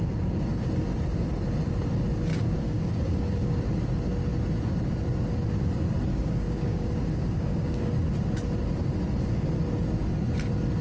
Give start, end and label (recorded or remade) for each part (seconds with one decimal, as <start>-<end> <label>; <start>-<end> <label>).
0.0-2.3 recorded; 2.3-3.6 remade; 3.6-6.1 recorded; 6.1-7.9 remade; 7.9-10.8 recorded